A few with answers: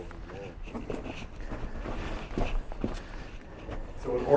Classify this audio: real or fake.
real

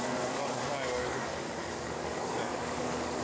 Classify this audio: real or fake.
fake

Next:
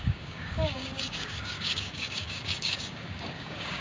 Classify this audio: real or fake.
fake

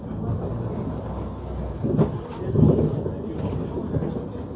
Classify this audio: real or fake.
real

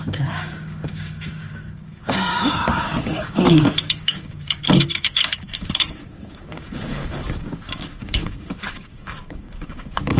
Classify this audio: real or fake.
fake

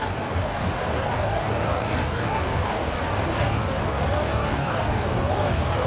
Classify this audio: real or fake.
fake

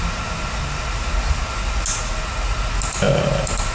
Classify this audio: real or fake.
real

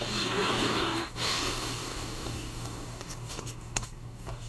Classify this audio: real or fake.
fake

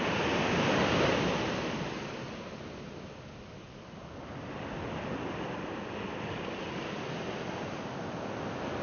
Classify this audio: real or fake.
real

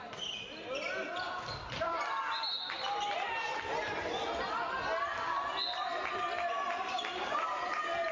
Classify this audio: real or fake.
real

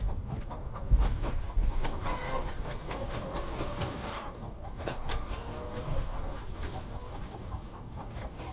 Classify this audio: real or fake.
fake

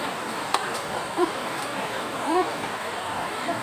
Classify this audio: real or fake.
fake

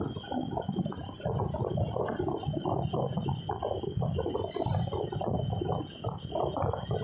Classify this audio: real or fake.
real